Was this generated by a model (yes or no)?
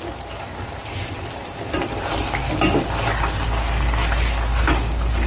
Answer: no